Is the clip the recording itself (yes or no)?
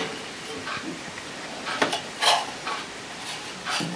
yes